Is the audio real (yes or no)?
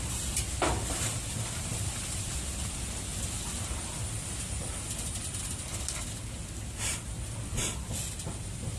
yes